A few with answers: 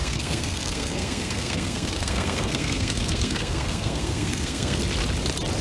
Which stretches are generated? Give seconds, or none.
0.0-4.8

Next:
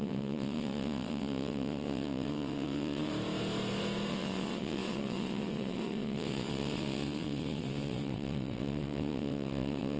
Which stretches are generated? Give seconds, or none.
0.0-3.1; 4.1-10.0